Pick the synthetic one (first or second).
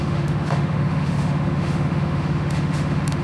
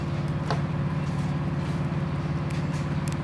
first